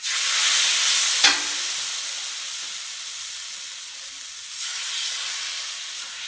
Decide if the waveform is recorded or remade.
recorded